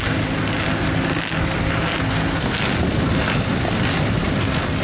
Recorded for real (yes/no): yes